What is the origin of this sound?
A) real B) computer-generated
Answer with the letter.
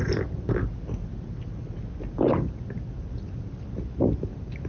A